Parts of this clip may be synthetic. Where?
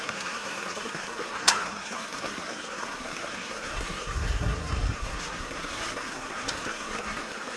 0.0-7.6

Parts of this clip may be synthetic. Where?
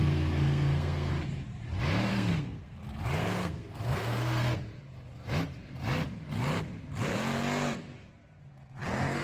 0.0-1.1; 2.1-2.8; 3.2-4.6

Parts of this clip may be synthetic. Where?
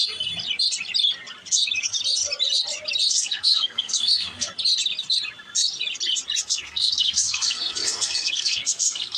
3.1-4.5; 6.4-9.2